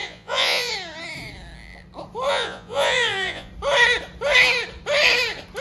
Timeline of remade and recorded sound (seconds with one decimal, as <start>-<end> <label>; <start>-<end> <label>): 0.0-0.7 remade; 0.7-2.3 recorded; 2.3-3.5 remade; 3.5-5.6 recorded